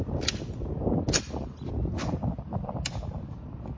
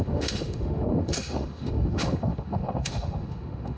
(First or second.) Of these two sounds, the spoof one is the second